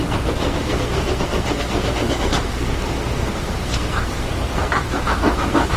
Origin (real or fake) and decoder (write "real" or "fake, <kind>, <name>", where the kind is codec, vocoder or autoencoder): fake, codec, SNAC